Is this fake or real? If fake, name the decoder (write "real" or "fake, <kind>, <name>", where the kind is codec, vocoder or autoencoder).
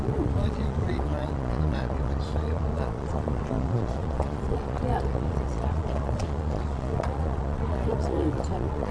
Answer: fake, vocoder, Vocos